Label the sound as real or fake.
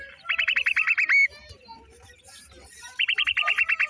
real